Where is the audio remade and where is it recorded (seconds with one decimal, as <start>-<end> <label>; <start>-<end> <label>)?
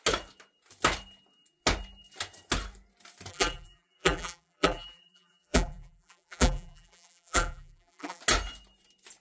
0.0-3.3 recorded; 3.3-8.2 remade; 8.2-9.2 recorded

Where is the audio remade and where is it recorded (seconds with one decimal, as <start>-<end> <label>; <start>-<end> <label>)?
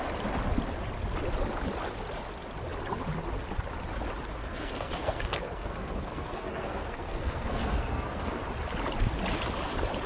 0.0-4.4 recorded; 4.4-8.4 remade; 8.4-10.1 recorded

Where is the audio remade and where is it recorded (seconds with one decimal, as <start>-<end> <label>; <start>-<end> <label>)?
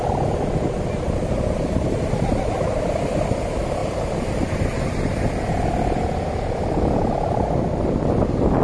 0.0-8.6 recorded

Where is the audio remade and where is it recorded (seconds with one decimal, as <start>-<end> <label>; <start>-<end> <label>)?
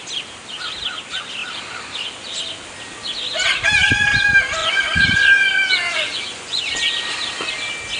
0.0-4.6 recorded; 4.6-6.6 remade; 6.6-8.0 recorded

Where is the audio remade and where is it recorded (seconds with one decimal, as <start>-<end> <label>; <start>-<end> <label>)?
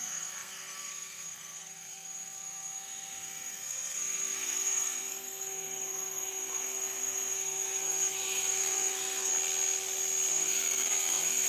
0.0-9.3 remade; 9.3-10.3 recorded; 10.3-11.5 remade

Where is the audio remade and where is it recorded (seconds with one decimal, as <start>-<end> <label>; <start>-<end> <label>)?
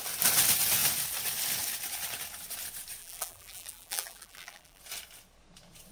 0.0-3.0 recorded; 3.0-4.8 remade; 4.8-5.9 recorded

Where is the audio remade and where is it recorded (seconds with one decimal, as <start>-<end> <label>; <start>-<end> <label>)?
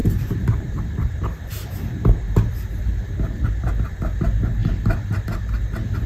0.0-3.7 remade; 3.7-4.6 recorded; 4.6-5.2 remade; 5.2-6.1 recorded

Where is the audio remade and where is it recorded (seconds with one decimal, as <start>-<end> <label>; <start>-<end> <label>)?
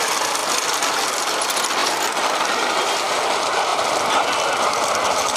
0.0-3.7 recorded; 3.7-4.9 remade; 4.9-5.4 recorded